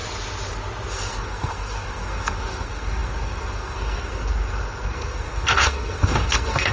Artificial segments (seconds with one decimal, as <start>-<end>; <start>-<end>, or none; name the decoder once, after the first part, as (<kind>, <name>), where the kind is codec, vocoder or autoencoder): 0.9-6.7 (codec, SNAC)